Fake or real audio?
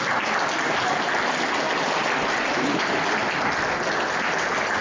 real